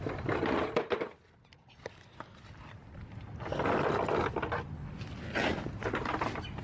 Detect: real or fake real